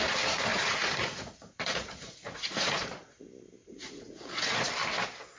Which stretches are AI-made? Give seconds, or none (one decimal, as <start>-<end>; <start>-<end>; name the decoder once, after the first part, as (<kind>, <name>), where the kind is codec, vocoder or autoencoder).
0.5-3.2 (vocoder, Vocos); 3.6-4.7